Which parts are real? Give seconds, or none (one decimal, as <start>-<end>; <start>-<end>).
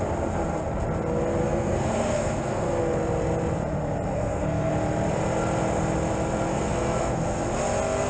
0.0-1.4; 2.8-4.1; 4.7-6.5; 7.5-8.1